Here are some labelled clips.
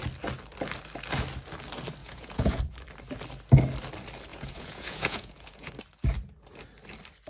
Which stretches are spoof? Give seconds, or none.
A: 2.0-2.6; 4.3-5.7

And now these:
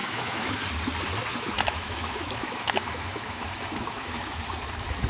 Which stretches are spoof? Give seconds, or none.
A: 0.0-0.6; 1.3-4.4

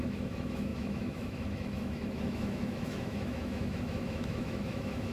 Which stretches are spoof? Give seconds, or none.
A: 0.0-5.1

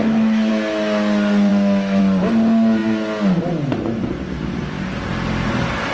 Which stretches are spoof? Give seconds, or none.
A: 0.0-0.5; 1.5-2.0

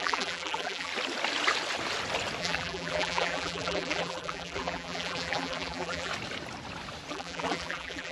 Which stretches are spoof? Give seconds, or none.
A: 0.0-0.9; 2.4-6.1; 7.1-8.1

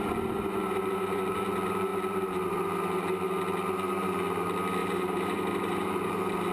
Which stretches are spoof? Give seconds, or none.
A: 4.8-6.1

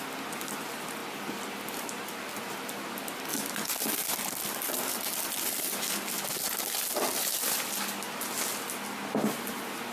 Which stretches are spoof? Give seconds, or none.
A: none